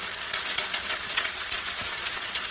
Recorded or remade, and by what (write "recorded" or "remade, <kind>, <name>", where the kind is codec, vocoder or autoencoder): remade, vocoder, WaveNeXt